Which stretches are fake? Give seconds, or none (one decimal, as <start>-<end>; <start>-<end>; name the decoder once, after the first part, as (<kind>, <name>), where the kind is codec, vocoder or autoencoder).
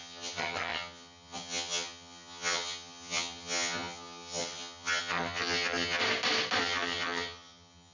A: 0.0-6.0 (vocoder, HiFi-GAN); 6.6-7.9